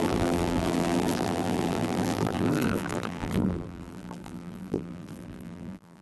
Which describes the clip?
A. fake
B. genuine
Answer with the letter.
A